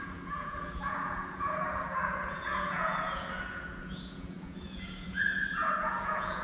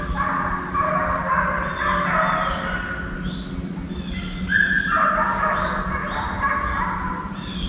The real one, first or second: second